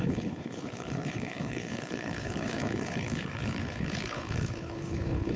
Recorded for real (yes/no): no